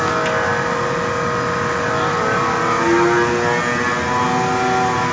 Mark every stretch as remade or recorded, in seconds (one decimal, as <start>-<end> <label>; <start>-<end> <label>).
0.0-5.1 recorded